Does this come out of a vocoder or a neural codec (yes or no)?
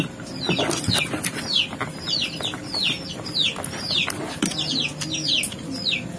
no